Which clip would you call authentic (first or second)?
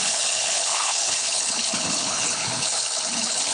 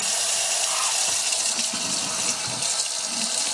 second